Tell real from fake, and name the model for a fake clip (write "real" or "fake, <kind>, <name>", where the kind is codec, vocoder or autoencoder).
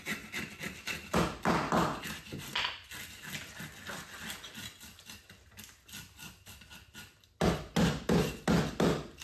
real